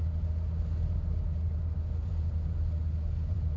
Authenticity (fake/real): real